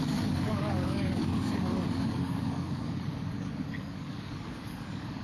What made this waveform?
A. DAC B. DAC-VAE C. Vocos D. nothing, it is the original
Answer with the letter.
A